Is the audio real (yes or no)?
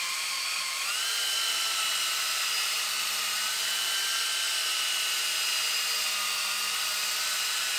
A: no